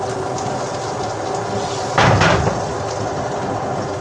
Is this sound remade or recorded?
recorded